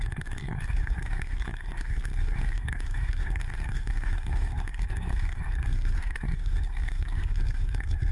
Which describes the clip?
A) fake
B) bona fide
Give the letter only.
A